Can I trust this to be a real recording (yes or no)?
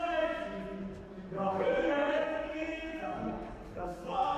no